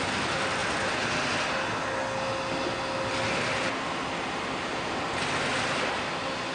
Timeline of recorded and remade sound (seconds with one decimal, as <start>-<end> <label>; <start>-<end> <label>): 0.0-0.6 remade; 0.6-4.5 recorded; 4.5-6.5 remade